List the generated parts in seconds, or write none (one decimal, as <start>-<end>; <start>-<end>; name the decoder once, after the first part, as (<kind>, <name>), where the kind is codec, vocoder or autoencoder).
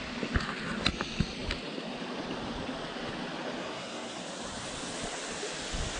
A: 3.6-4.2 (codec, SNAC)